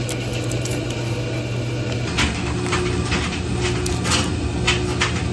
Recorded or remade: recorded